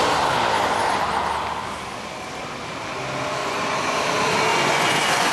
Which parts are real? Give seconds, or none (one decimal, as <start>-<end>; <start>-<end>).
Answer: 0.0-3.4; 4.0-4.5